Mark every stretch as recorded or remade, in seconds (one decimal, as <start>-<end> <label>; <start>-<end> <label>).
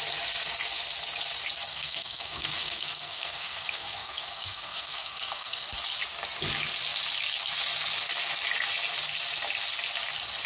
0.0-1.7 recorded; 1.7-5.7 remade; 5.7-10.5 recorded